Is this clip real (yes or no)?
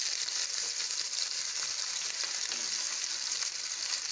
yes